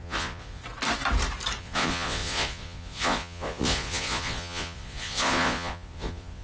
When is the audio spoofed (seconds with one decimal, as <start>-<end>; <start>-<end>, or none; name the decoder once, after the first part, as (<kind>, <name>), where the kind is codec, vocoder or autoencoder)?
0.0-0.6 (vocoder, Vocos); 1.6-6.4